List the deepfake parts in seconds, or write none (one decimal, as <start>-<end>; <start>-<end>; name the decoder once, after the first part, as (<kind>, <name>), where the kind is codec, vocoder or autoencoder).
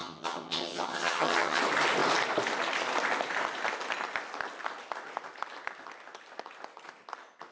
0.0-1.6 (vocoder, HiFi-GAN)